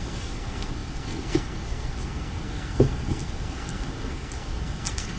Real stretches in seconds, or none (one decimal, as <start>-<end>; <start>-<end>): none